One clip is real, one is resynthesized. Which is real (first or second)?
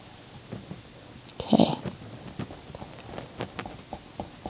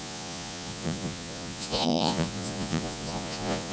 first